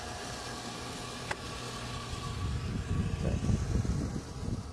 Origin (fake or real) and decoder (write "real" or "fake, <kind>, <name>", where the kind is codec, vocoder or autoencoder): real